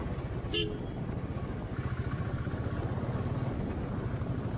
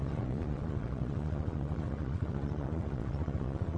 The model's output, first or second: second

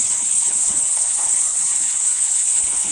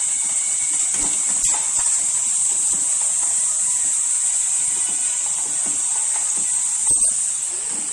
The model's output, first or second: first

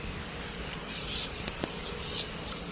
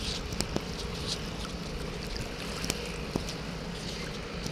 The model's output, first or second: first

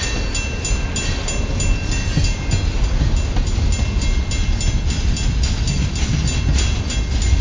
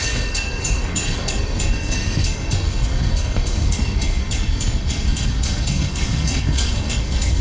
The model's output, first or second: second